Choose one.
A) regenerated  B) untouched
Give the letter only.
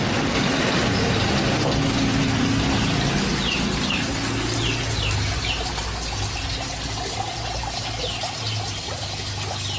B